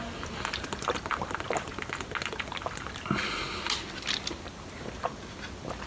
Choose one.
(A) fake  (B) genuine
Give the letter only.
B